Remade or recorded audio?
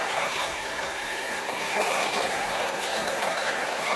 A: remade